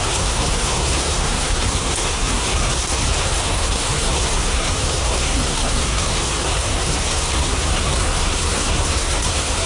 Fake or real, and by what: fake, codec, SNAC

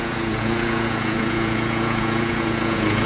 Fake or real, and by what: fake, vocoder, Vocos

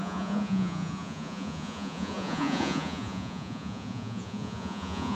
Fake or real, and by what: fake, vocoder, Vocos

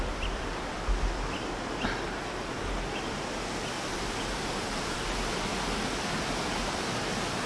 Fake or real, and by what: real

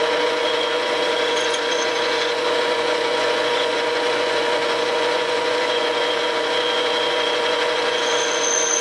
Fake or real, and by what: fake, vocoder, Vocos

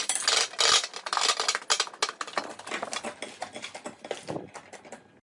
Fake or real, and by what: real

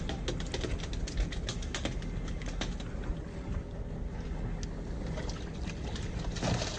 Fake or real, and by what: real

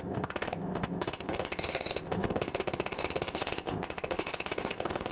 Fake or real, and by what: fake, codec, ZipCodec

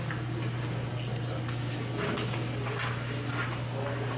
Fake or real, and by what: real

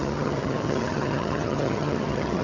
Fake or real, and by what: fake, vocoder, HiFi-GAN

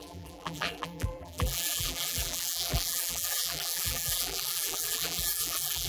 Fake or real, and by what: fake, vocoder, BigVGAN v2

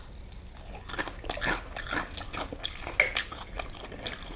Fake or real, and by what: real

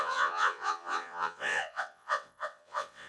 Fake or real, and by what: fake, vocoder, WaveNeXt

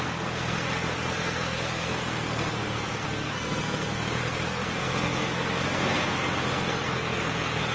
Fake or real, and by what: fake, codec, SNAC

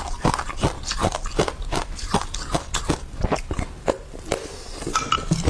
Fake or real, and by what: real